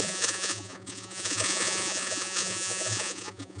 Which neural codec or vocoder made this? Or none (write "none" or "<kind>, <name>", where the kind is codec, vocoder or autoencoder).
vocoder, Vocos